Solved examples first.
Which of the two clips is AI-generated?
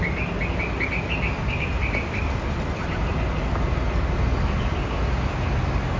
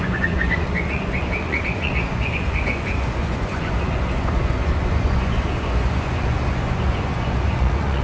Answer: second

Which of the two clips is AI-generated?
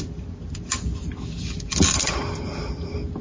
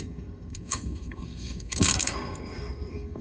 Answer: second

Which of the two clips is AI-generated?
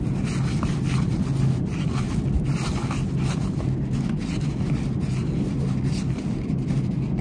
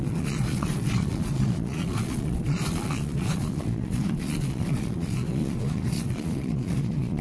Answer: second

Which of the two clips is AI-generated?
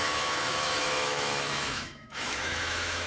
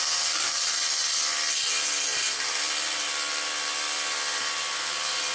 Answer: first